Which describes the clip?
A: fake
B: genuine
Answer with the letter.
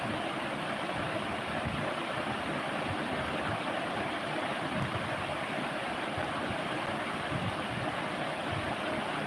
B